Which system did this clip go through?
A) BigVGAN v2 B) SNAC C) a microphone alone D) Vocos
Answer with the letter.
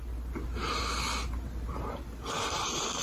C